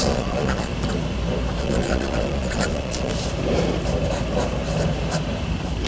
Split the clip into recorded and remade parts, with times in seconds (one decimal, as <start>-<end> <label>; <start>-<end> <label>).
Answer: 0.0-0.7 remade; 0.7-1.6 recorded; 1.6-3.1 remade; 3.1-5.9 recorded